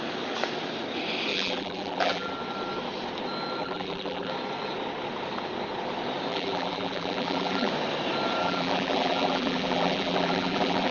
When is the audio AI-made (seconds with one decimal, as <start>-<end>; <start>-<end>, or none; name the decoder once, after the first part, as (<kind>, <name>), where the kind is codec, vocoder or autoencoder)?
1.3-2.3 (vocoder, BigVGAN v2); 3.6-4.3; 6.3-7.7; 8.4-10.9